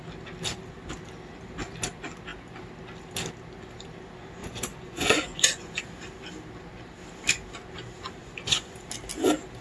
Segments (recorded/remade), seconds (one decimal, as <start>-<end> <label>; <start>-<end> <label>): 0.0-4.4 recorded; 4.4-5.8 remade; 5.8-8.2 recorded; 8.2-8.8 remade; 8.8-9.6 recorded